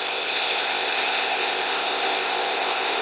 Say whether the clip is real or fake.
fake